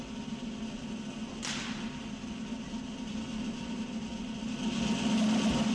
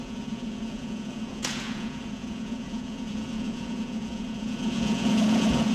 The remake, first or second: second